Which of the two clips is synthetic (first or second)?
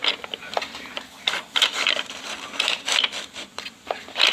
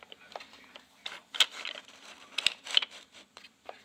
first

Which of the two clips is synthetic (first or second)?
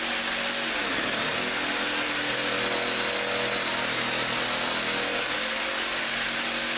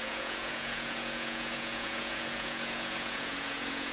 second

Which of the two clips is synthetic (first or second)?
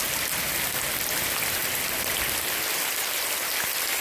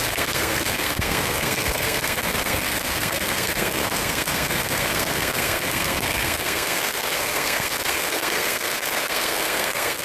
second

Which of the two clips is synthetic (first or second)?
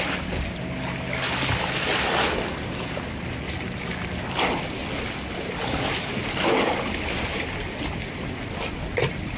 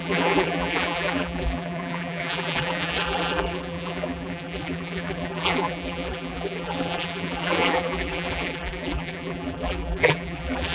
second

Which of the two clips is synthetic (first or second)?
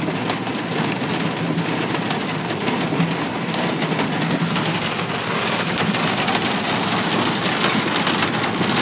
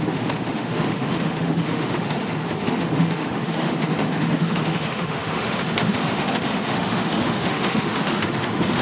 second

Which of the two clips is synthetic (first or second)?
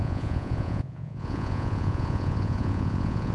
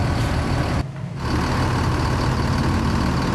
first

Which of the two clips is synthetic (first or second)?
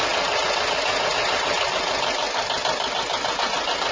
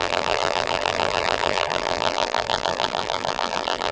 second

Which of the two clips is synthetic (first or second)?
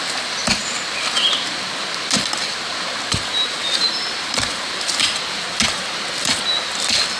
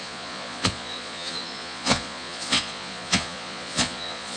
second